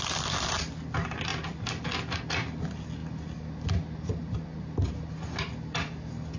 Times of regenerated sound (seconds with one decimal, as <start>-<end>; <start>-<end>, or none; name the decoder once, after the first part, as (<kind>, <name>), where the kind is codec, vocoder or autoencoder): none